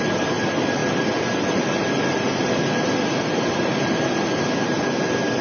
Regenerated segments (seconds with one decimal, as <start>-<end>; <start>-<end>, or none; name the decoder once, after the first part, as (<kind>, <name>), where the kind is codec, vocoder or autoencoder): none